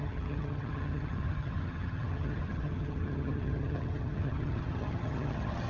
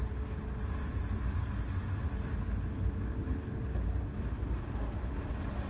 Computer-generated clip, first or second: first